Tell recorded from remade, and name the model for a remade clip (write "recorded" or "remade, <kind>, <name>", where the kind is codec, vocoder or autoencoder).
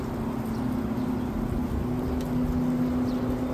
recorded